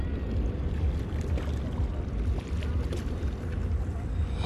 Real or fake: real